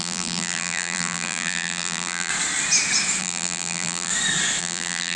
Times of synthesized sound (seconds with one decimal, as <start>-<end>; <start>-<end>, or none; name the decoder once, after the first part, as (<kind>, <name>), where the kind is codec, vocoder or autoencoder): 0.0-2.3 (vocoder, BigVGAN v2); 3.2-4.1; 4.6-5.2